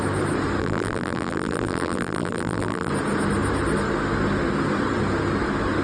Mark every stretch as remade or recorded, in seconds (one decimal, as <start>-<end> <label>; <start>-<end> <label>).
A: 0.0-0.6 recorded; 0.6-2.9 remade; 2.9-5.8 recorded